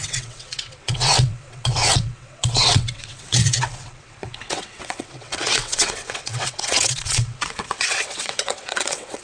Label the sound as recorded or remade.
remade